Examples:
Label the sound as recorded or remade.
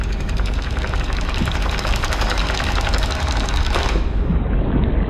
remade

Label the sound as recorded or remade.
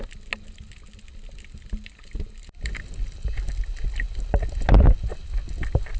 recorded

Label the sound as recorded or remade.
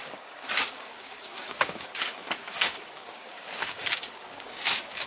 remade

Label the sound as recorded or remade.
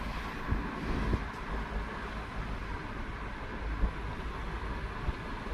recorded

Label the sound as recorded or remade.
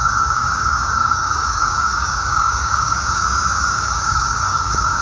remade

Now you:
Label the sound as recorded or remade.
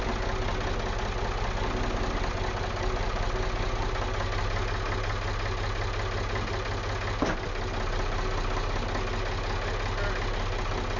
recorded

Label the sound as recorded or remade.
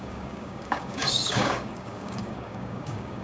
remade